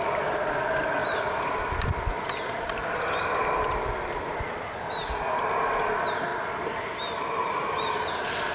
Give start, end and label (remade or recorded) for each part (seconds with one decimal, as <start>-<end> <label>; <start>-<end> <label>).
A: 0.0-1.0 recorded; 1.0-4.2 remade; 4.2-6.3 recorded; 6.3-7.2 remade; 7.2-8.5 recorded